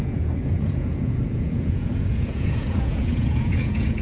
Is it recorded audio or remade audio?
remade